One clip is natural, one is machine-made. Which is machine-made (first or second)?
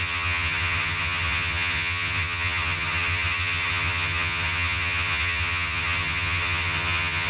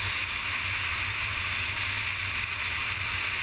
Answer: first